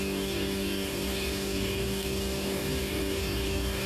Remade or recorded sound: remade